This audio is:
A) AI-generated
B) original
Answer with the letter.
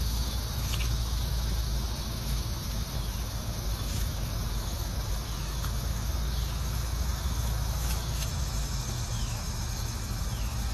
A